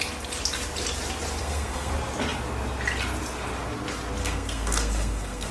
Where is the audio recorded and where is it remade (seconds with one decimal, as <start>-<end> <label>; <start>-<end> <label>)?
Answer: 0.0-1.4 recorded; 1.4-1.9 remade; 1.9-4.2 recorded; 4.2-5.5 remade